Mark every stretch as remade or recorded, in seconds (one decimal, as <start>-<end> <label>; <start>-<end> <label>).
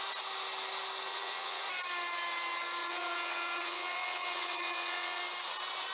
0.0-1.1 recorded; 1.1-1.6 remade; 1.6-2.8 recorded; 2.8-5.2 remade; 5.2-5.9 recorded